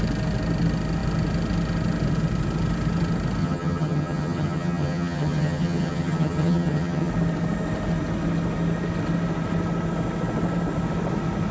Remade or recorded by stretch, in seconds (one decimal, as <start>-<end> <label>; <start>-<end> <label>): 0.0-3.4 recorded; 3.4-7.1 remade; 7.1-11.5 recorded